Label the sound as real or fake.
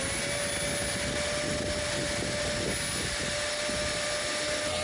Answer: real